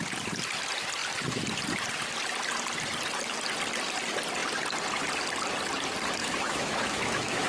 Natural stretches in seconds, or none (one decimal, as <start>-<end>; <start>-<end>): 0.0-6.2